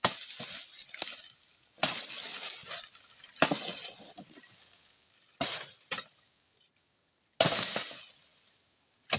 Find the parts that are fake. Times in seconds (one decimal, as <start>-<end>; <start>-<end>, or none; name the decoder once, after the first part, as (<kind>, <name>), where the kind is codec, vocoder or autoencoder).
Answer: none